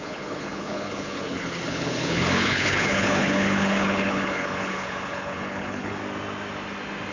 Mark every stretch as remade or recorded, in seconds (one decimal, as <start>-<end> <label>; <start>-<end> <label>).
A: 0.0-6.0 remade; 6.0-7.1 recorded

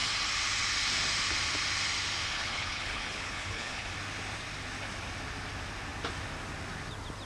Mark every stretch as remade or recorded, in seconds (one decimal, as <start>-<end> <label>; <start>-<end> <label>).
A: 0.0-2.3 recorded; 2.3-3.9 remade; 3.9-7.3 recorded

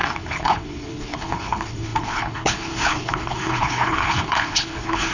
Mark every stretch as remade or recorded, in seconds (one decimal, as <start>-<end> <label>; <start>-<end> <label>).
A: 0.0-5.1 remade

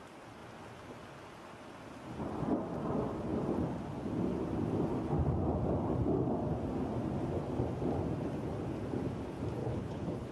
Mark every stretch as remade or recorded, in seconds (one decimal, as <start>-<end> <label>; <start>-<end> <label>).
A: 0.0-9.6 recorded; 9.6-10.3 remade